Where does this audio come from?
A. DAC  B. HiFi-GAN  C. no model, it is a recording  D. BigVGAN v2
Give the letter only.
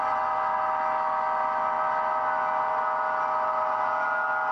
C